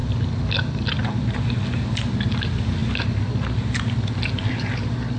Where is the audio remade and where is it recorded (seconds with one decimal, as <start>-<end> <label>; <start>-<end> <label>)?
0.0-5.2 recorded